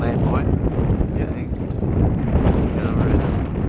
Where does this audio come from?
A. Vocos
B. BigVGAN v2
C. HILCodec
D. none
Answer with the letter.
B